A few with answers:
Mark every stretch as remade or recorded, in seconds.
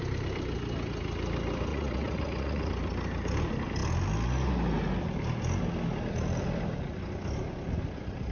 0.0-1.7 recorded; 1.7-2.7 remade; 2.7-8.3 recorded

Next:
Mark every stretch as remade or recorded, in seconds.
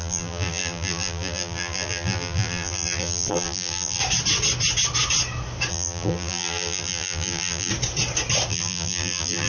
0.0-4.0 remade; 4.0-5.7 recorded; 5.7-7.7 remade; 7.7-8.5 recorded; 8.5-9.5 remade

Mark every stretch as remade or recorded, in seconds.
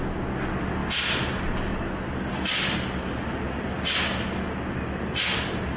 0.0-5.8 recorded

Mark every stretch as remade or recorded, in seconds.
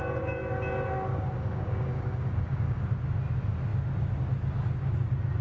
0.0-1.1 recorded; 1.1-2.8 remade; 2.8-5.4 recorded